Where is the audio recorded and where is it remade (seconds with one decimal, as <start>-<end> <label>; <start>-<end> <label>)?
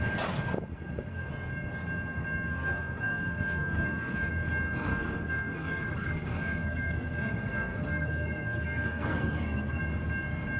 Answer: 0.0-0.7 recorded; 0.7-1.3 remade; 1.3-2.5 recorded; 2.5-4.3 remade; 4.3-4.9 recorded; 4.9-9.8 remade; 9.8-10.6 recorded